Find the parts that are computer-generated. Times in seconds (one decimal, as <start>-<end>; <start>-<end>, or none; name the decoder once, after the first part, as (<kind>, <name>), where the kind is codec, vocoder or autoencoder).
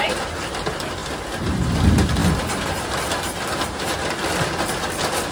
none